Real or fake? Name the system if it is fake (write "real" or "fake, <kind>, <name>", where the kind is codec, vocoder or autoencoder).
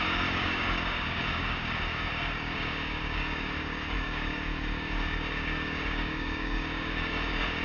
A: fake, codec, DAC